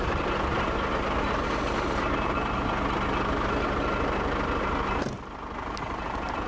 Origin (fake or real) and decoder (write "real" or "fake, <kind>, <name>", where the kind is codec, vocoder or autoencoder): real